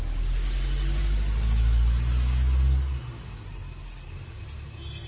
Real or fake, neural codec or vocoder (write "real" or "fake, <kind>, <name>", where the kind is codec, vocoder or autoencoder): real